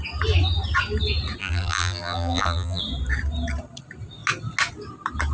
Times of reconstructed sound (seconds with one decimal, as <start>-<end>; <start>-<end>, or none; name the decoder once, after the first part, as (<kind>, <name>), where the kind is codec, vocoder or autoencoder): 1.4-2.8 (vocoder, BigVGAN v2)